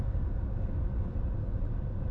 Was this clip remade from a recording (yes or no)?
no